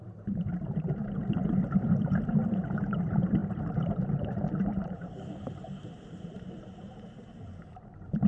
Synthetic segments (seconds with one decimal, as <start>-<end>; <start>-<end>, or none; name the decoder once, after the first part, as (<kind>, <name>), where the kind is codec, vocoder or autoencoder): 0.0-8.3 (vocoder, BigVGAN v2)